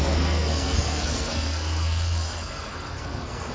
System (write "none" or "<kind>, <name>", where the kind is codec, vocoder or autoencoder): codec, SNAC